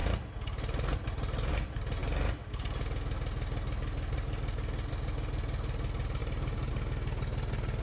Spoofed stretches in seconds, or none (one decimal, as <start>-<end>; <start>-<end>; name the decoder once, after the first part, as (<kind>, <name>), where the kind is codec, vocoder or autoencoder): none